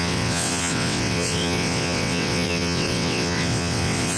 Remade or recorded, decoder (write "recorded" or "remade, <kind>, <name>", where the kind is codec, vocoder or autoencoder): remade, vocoder, WaveNeXt